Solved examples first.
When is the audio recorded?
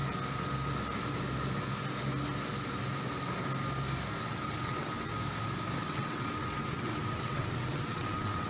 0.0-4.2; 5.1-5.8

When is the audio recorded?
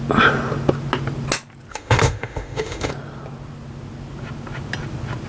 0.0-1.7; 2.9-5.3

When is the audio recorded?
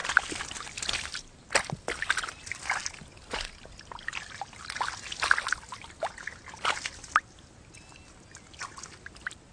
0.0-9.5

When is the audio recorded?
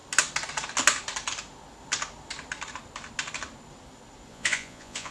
0.0-4.3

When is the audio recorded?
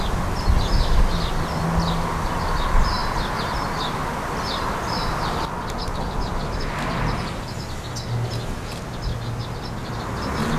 0.0-10.6